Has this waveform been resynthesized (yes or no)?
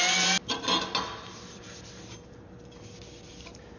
no